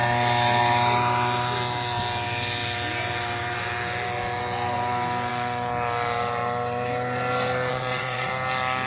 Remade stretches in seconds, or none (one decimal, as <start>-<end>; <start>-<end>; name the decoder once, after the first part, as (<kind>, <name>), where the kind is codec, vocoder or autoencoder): 7.7-8.3 (vocoder, Vocos)